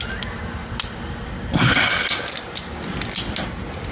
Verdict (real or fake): real